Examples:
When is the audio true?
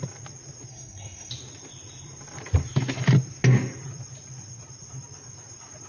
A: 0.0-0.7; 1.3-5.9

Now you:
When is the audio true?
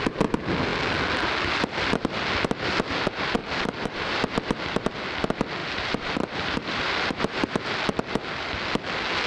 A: 0.0-3.4; 4.1-5.6; 7.2-9.3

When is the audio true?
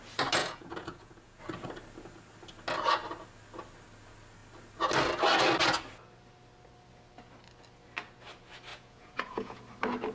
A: 0.0-0.4; 1.4-8.7; 9.6-10.1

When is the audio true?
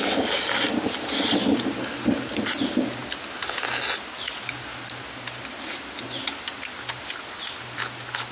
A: 0.0-8.3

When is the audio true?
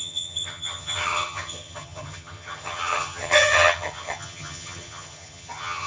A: none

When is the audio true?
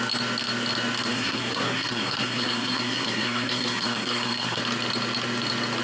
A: 0.0-1.1; 4.6-5.8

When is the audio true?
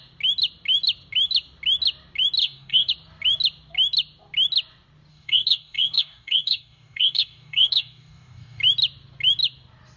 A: 0.0-2.4; 2.9-5.1; 8.6-10.0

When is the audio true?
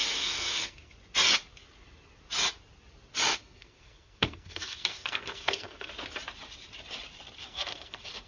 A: 0.9-3.3; 5.9-7.4